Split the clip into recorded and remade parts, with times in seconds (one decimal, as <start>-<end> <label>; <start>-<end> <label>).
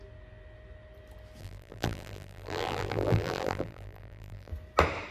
0.0-1.4 recorded; 1.4-4.5 remade; 4.5-5.1 recorded